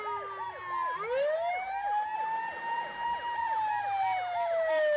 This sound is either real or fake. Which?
real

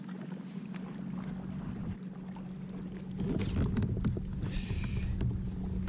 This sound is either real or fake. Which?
real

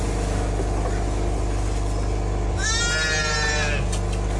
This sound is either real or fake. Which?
real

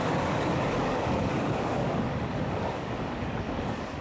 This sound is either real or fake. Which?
fake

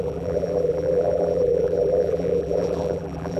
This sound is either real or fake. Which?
fake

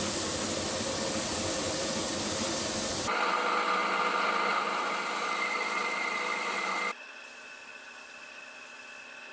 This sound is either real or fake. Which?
real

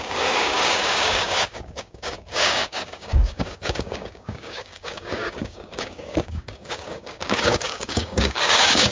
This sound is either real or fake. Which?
fake